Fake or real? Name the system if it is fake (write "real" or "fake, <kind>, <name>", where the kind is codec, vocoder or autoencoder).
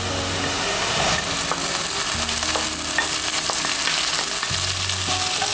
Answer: real